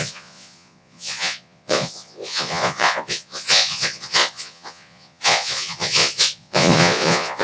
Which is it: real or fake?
fake